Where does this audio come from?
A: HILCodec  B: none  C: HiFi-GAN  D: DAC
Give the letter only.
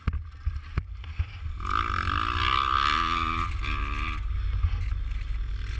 B